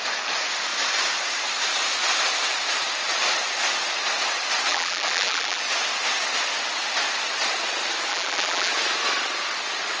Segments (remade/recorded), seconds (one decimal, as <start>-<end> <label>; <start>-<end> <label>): 0.0-4.7 recorded; 4.7-5.6 remade; 5.6-8.1 recorded; 8.1-8.7 remade; 8.7-10.0 recorded